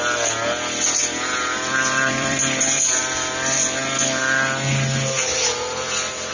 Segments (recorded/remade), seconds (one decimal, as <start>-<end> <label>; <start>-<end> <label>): 0.0-1.0 recorded; 1.0-3.0 remade; 3.0-6.3 recorded